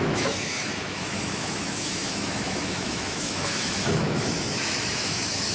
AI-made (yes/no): yes